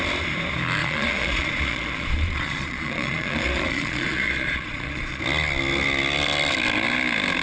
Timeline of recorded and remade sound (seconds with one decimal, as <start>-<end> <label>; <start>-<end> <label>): 0.0-0.8 recorded; 0.8-5.2 remade; 5.2-7.4 recorded